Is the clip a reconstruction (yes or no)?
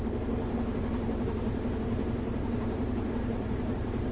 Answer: yes